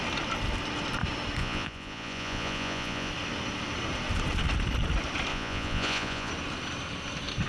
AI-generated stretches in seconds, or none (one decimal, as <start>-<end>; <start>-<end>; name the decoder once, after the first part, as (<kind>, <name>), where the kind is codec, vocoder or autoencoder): 1.4-3.1 (vocoder, Vocos); 5.3-6.3